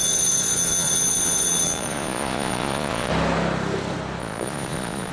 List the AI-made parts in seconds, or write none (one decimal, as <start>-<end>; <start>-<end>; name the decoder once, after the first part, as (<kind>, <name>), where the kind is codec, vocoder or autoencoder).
0.0-3.1 (vocoder, Vocos); 4.2-5.1

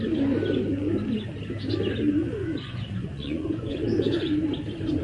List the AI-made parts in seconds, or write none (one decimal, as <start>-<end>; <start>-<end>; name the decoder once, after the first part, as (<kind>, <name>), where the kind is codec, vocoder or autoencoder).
2.2-4.3 (vocoder, Vocos)

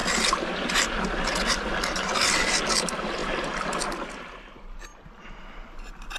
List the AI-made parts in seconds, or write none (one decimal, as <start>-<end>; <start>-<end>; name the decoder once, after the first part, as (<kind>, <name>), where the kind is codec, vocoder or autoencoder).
none

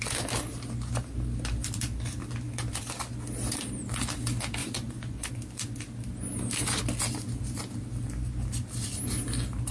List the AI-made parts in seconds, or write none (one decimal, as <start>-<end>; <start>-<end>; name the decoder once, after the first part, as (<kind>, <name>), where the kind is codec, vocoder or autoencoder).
4.6-5.3 (vocoder, Vocos)

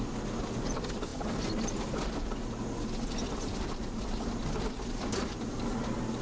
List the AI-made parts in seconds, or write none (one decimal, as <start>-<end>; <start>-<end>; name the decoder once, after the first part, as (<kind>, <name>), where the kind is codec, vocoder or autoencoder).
none